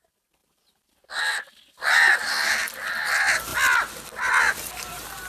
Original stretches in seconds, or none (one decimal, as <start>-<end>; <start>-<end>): 0.0-5.3